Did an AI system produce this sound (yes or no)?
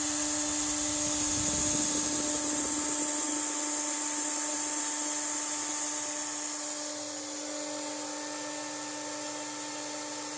no